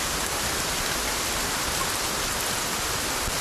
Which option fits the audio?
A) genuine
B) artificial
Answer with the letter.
A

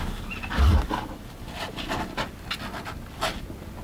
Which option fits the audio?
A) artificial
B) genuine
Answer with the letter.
B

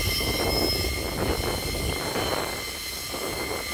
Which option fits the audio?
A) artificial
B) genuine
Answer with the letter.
B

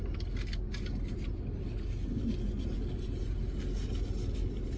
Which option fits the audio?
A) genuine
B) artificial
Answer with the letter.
A